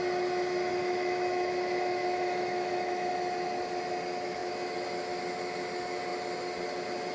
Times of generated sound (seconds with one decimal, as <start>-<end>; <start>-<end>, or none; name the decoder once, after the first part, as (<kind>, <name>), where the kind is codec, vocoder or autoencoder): 0.7-3.1 (autoencoder, DAC-VAE)